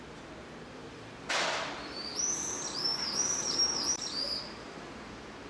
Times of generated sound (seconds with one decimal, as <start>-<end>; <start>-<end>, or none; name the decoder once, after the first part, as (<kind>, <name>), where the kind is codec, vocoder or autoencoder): 2.9-5.5 (vocoder, BigVGAN v2)